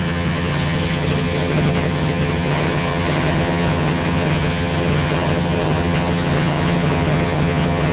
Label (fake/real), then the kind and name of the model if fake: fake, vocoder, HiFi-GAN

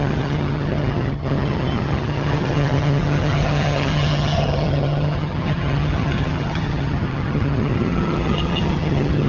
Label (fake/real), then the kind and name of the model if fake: fake, vocoder, HiFi-GAN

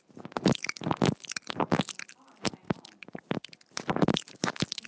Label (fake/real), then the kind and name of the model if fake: real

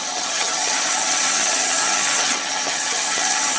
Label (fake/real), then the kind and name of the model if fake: fake, vocoder, HiFi-GAN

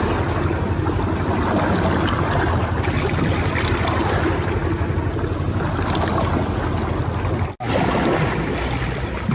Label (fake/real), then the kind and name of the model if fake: real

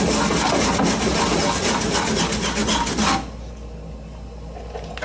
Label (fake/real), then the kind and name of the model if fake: real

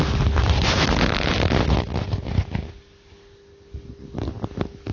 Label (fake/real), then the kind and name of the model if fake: real